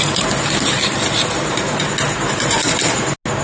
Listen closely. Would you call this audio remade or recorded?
recorded